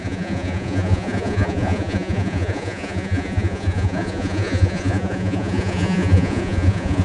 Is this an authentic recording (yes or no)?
no